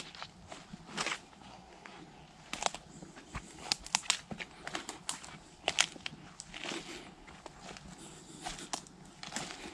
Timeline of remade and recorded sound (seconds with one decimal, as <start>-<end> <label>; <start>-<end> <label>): 0.0-1.4 recorded; 1.4-2.0 remade; 2.0-9.7 recorded

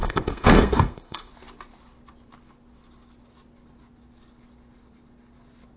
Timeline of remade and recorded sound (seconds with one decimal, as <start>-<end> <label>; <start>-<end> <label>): 0.0-1.3 remade; 1.3-5.8 recorded

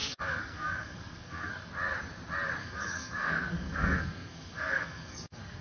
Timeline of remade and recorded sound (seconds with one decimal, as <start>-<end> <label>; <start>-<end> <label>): 0.0-1.7 remade; 1.7-2.6 recorded; 2.6-5.6 remade

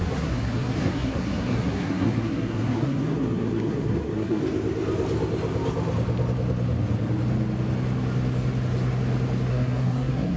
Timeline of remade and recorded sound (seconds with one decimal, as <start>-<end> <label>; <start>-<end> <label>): 0.0-4.4 remade; 4.4-9.5 recorded; 9.5-10.4 remade

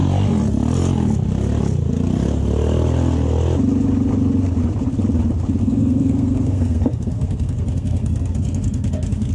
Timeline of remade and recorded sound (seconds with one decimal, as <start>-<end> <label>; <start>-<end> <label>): 0.0-5.6 recorded; 5.6-9.3 remade

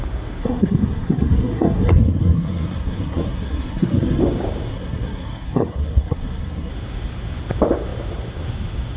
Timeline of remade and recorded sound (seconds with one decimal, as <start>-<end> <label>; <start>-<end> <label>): 0.0-0.4 recorded; 0.4-4.2 remade; 4.2-4.7 recorded; 4.7-6.7 remade; 6.7-9.0 recorded

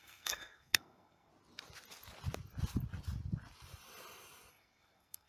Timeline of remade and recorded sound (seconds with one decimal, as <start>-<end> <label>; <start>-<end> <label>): 0.0-1.3 remade; 1.3-4.5 recorded; 4.5-5.3 remade